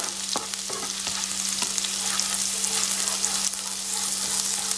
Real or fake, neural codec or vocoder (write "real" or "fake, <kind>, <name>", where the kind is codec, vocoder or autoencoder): real